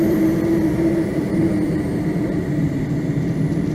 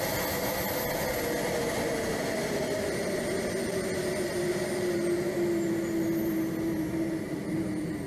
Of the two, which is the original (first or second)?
second